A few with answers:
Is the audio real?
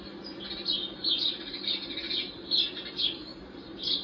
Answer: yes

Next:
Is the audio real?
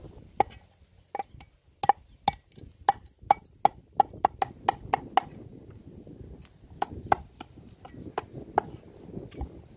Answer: yes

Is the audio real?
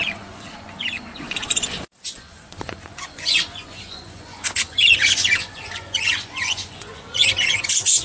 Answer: no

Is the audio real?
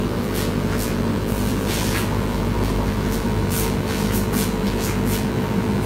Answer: no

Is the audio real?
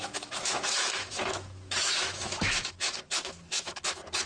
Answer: no